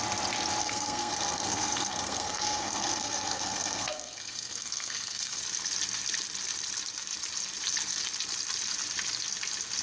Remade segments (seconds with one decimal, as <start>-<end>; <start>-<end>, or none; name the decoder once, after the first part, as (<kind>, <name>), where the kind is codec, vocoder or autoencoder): 0.6-5.4 (codec, SNAC)